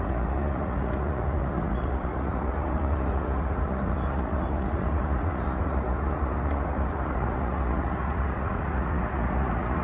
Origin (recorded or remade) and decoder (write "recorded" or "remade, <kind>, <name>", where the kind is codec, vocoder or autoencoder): remade, vocoder, Vocos